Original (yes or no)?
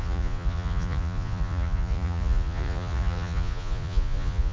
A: no